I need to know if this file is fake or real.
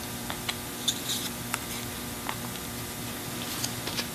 real